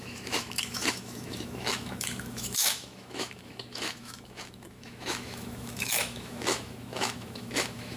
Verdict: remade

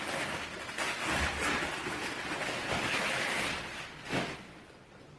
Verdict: recorded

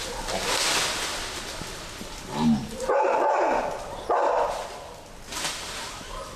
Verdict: recorded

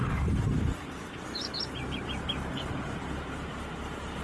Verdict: recorded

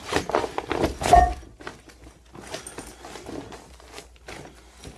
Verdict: recorded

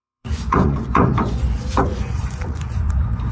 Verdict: remade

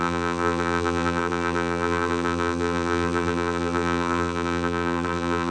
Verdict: remade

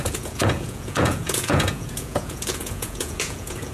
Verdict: remade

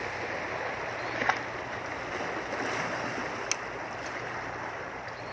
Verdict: recorded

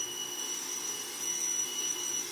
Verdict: remade